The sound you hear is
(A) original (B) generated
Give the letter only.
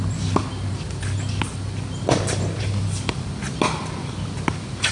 A